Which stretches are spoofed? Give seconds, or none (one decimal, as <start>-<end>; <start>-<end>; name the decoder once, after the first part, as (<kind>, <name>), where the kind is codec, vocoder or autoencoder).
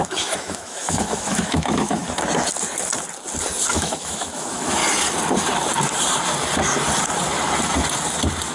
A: 0.0-2.0 (autoencoder, DAC-VAE); 3.7-4.8